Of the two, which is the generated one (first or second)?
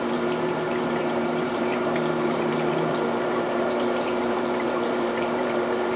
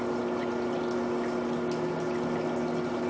first